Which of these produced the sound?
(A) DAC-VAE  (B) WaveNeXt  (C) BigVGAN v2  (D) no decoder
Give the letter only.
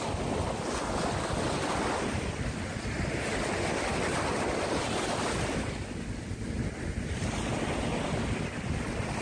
D